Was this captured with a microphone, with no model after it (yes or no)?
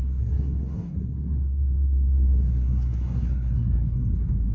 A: no